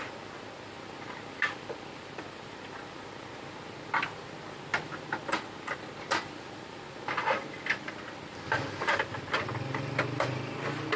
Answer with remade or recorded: recorded